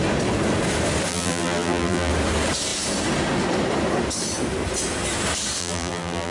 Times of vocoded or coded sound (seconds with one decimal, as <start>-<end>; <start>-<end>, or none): 1.1-2.1; 5.6-6.3